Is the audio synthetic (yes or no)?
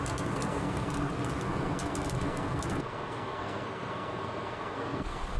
yes